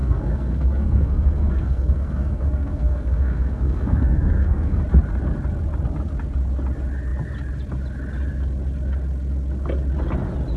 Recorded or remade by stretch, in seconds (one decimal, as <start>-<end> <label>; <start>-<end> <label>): 0.0-4.8 remade; 4.8-10.6 recorded